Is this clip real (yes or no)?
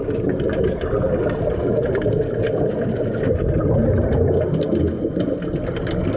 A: yes